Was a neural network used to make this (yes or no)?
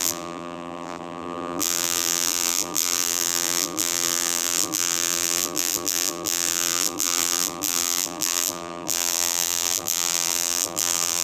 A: yes